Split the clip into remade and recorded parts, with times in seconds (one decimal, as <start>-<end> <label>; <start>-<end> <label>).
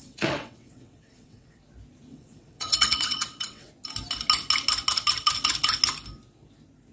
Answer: 0.0-1.6 remade; 1.6-2.1 recorded; 2.1-3.7 remade; 3.7-6.9 recorded